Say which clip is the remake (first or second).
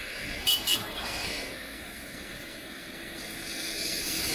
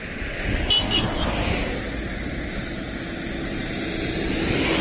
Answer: first